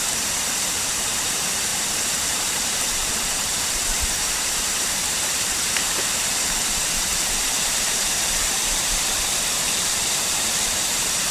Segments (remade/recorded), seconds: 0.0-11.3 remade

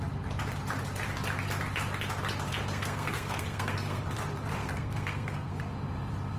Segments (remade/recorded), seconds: 0.0-2.7 recorded; 2.7-4.0 remade; 4.0-4.6 recorded; 4.6-5.6 remade; 5.6-6.4 recorded